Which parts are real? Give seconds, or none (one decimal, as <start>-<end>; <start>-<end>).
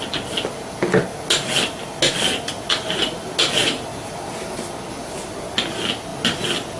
0.0-6.8